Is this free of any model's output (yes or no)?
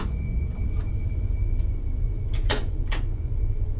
no